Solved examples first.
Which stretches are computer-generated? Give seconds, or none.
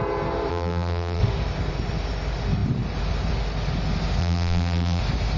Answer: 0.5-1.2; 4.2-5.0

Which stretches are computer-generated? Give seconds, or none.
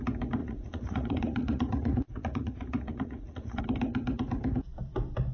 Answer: 0.4-3.6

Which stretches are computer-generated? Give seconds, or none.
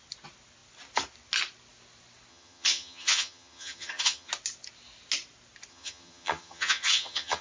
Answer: 2.3-4.3; 5.7-7.4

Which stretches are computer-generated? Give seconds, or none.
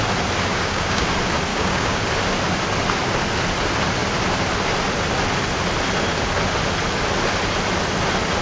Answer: 0.5-1.1; 1.5-2.0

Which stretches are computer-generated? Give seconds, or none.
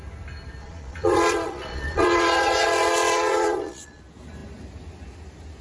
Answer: 0.6-4.0